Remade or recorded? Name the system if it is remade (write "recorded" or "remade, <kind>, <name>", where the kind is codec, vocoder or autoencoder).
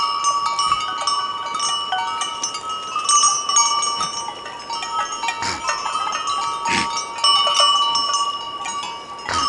recorded